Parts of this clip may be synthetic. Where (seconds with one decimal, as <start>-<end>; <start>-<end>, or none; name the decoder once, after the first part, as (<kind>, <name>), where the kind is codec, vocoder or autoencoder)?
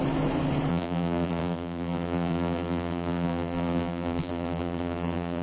0.7-5.4 (vocoder, BigVGAN v2)